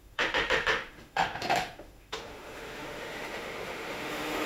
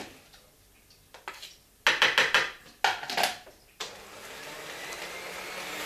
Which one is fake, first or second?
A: first